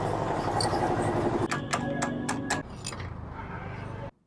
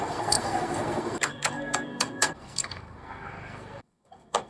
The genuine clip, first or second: first